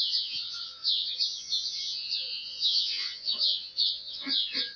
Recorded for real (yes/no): no